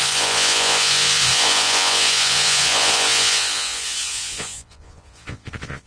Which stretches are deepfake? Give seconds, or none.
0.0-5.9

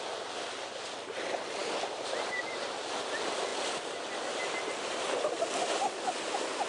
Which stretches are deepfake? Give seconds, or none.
none

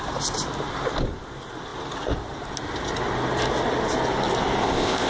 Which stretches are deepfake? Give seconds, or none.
4.6-5.1

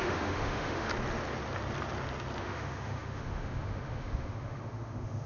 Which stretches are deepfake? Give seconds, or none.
0.0-0.9; 2.4-5.3